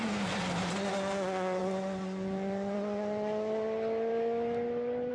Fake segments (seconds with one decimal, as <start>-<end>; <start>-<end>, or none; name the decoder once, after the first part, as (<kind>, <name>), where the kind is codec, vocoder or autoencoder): none

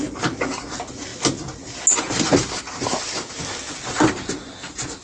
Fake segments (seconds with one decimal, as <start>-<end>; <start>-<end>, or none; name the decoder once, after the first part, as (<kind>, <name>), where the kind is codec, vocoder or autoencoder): none

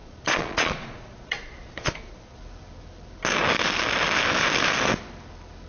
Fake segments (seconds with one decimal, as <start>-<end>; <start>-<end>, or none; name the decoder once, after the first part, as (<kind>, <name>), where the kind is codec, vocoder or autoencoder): 0.0-2.4 (vocoder, Vocos)

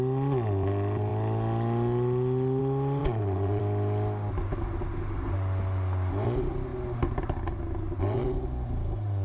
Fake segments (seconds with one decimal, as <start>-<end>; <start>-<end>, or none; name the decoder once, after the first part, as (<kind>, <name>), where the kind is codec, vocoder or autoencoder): 3.0-3.6 (vocoder, Vocos)

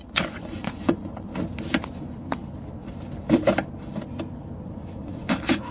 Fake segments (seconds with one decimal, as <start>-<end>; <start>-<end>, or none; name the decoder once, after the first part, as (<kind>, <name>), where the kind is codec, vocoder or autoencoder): 0.0-1.3 (vocoder, Vocos); 1.9-2.4; 4.6-5.7

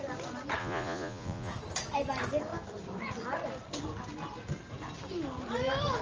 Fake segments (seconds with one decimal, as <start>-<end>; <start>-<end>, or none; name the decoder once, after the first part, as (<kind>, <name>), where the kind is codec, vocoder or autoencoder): 0.6-1.5 (vocoder, Vocos)

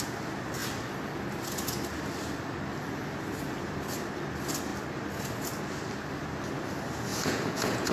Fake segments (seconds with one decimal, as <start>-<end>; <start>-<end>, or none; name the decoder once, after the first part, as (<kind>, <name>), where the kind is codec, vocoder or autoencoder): 7.1-7.9 (vocoder, Vocos)

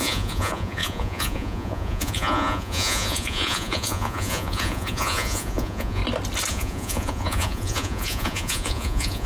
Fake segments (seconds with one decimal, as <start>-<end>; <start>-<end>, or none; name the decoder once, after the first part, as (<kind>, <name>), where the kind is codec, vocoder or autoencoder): 0.0-6.0 (vocoder, Vocos); 6.5-9.3